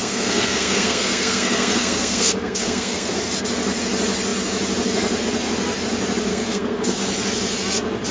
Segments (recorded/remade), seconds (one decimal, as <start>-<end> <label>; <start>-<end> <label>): 0.0-3.1 remade; 3.1-6.3 recorded; 6.3-7.0 remade; 7.0-8.1 recorded